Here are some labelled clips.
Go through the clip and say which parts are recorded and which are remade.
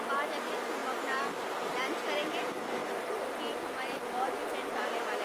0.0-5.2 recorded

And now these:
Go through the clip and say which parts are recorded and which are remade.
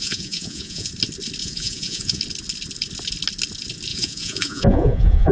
0.0-0.9 remade; 0.9-1.4 recorded; 1.4-2.2 remade; 2.2-3.9 recorded; 3.9-5.3 remade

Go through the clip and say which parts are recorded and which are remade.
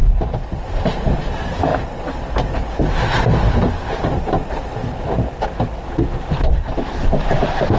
0.0-7.8 recorded